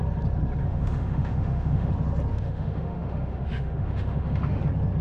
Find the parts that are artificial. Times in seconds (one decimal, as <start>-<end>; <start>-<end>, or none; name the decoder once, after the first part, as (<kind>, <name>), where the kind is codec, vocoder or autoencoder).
0.6-1.9 (autoencoder, DAC-VAE); 2.3-4.6